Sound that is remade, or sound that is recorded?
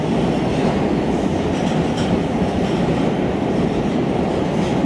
recorded